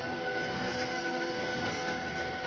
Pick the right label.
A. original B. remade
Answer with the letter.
B